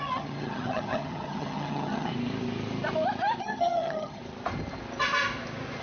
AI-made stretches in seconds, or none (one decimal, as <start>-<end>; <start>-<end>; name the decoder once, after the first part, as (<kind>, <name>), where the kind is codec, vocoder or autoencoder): 0.0-2.1 (vocoder, HiFi-GAN); 3.4-4.2